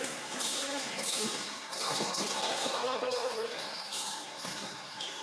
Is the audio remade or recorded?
remade